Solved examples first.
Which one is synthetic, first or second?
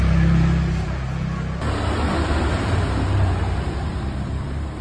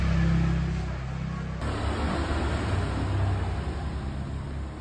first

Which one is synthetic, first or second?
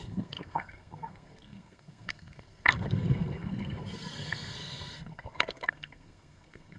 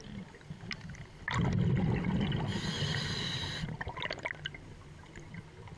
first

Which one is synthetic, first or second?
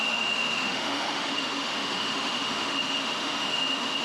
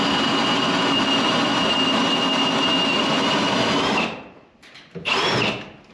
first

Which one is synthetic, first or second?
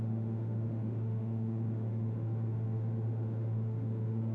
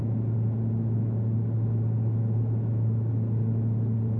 first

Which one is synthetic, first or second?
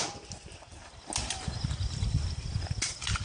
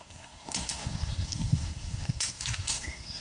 second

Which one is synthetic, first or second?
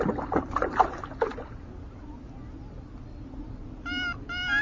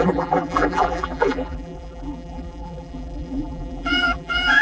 second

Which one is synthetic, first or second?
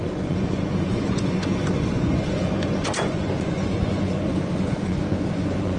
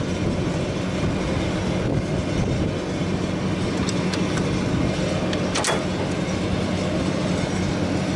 first